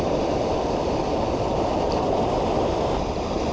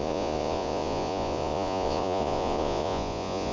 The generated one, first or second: second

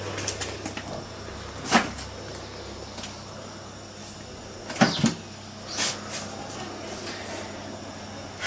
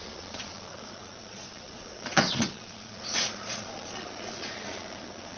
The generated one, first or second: second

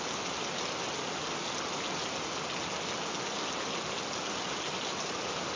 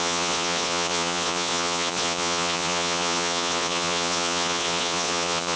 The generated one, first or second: second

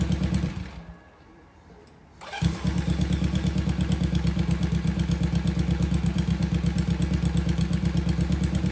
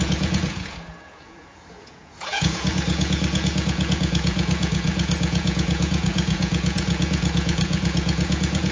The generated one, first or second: second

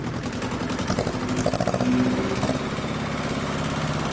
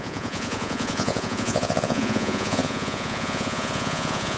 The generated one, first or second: second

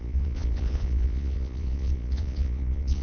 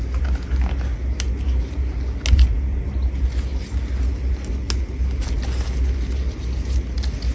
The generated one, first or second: first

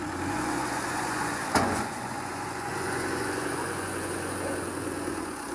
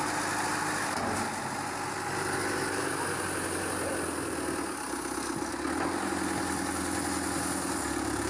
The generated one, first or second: first